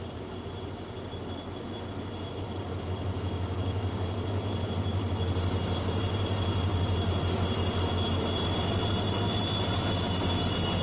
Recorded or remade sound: recorded